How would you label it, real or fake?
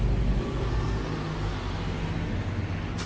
real